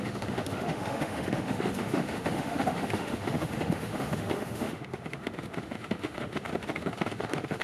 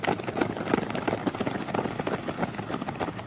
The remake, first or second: first